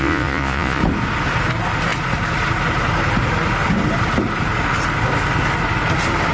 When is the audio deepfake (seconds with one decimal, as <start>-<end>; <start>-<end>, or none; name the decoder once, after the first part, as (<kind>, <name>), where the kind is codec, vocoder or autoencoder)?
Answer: 0.0-0.8 (vocoder, Vocos)